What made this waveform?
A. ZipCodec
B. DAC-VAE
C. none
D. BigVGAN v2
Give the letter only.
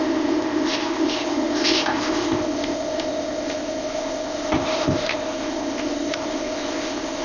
A